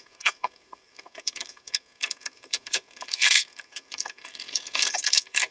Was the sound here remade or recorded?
remade